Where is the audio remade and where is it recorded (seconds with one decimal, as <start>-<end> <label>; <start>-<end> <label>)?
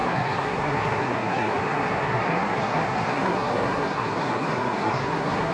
0.0-5.5 remade